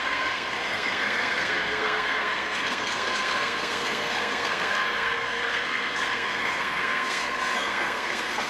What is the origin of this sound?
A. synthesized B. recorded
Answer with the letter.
A